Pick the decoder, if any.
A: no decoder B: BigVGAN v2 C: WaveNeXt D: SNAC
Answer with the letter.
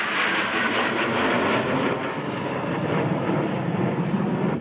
A